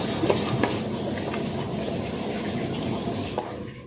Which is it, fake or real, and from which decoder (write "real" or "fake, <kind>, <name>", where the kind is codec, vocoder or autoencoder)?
real